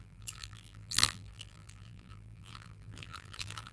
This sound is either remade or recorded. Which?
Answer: remade